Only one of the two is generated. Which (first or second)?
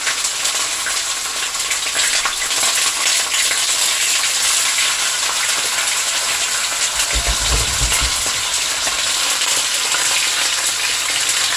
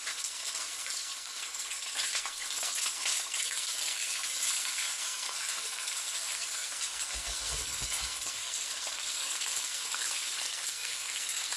second